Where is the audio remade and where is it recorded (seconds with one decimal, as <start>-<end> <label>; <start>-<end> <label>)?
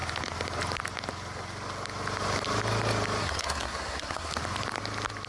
0.0-3.2 recorded; 3.2-4.3 remade; 4.3-5.3 recorded